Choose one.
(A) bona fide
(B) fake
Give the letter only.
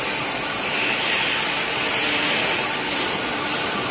A